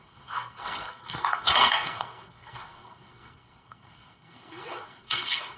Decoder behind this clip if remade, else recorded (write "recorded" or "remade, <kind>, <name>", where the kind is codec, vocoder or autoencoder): remade, codec, SNAC